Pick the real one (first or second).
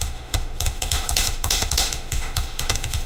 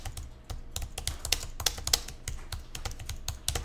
second